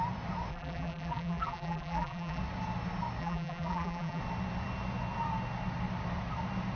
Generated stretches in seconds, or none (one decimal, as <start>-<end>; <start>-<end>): 0.5-2.4; 3.2-4.2